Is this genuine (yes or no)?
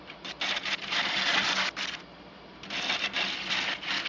yes